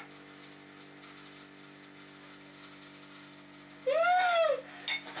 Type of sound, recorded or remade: recorded